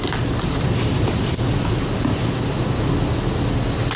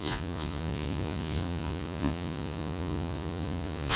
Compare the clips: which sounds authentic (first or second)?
first